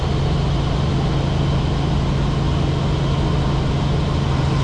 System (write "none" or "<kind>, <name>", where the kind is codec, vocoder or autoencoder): none